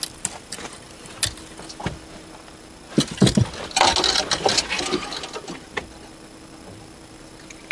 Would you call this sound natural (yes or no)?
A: yes